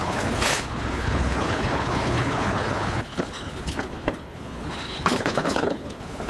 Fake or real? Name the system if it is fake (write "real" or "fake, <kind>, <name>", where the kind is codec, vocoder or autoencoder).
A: fake, codec, HILCodec